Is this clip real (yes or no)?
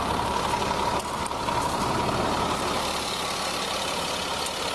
no